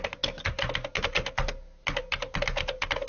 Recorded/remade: recorded